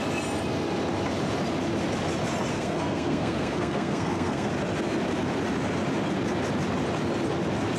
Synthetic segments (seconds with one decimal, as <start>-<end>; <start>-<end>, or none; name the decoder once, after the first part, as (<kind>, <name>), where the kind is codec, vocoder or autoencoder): 2.5-4.5 (codec, SNAC)